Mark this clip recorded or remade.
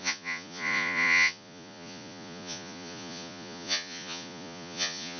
remade